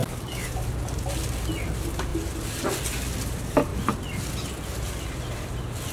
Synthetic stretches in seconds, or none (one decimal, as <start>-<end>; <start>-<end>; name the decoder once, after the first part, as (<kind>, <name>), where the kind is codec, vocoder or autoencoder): 0.0-0.5 (codec, DAC)